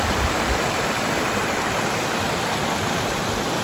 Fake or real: fake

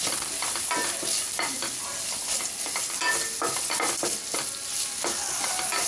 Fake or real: real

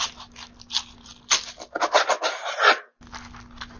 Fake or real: real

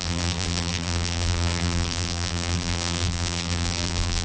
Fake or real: fake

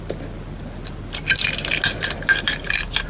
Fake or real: real